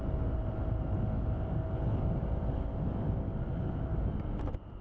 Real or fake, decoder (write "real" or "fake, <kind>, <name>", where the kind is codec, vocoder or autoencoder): real